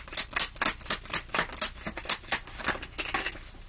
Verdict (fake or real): real